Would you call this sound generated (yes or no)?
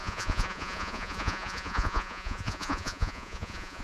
yes